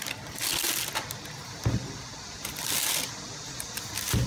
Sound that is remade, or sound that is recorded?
recorded